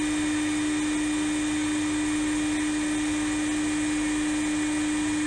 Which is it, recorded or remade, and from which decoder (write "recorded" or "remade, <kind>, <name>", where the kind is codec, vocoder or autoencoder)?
recorded